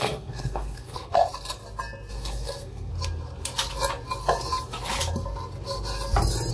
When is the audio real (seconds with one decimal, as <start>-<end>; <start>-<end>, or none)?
1.2-2.1; 2.9-6.5